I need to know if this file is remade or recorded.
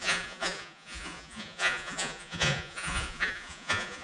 remade